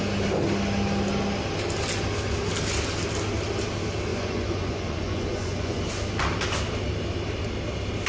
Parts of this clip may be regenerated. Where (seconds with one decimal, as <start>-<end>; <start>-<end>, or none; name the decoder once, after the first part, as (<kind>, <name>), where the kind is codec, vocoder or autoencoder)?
4.1-5.8 (vocoder, Vocos)